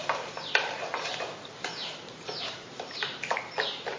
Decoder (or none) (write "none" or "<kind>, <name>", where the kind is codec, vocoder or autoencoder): vocoder, BigVGAN v2